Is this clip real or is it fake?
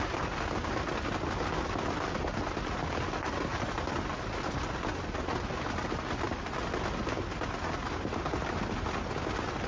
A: real